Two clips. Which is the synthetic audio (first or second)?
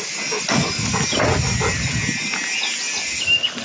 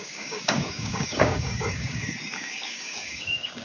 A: second